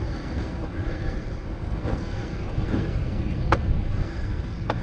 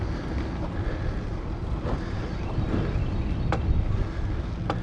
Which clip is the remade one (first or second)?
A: first